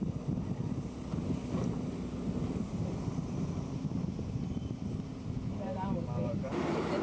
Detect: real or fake real